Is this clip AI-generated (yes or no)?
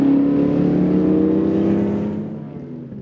no